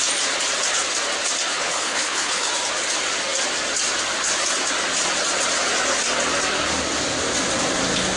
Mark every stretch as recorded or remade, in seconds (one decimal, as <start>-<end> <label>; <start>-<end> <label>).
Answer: 0.0-1.5 recorded; 1.5-2.5 remade; 2.5-8.2 recorded

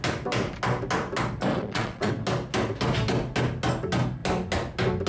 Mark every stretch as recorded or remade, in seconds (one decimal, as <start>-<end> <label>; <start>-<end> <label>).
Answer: 0.0-1.5 recorded; 1.5-2.1 remade; 2.1-5.1 recorded

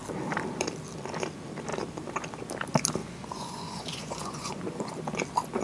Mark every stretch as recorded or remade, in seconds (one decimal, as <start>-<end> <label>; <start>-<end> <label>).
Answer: 0.0-3.0 recorded; 3.0-4.9 remade; 4.9-5.6 recorded